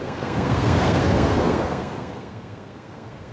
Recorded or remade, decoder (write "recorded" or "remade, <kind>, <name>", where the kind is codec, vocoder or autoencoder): remade, codec, SNAC